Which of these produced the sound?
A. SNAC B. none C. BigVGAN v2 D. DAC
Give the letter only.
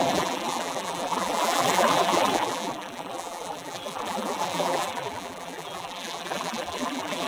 C